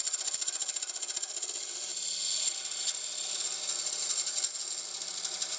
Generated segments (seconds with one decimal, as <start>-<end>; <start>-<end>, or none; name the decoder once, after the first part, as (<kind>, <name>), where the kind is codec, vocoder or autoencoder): none